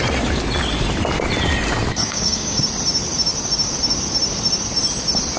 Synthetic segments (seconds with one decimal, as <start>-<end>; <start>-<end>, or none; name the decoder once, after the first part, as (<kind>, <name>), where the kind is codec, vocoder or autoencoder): 2.0-2.6 (codec, DAC)